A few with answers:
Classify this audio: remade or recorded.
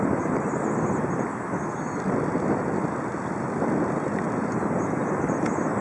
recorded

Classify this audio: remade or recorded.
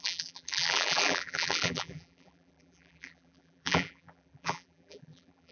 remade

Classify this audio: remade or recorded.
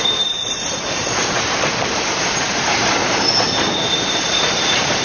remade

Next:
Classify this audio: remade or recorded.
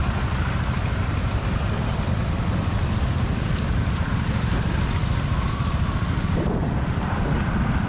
remade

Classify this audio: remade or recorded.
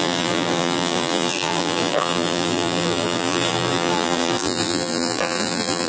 remade